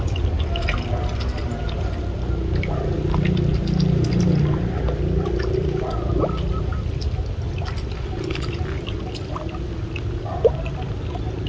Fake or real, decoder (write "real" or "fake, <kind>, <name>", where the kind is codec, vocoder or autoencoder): real